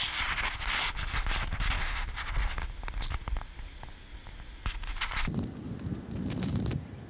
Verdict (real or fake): real